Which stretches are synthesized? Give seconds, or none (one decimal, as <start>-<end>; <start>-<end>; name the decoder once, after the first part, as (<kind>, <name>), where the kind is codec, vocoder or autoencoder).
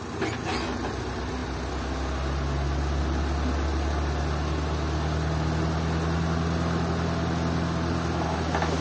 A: none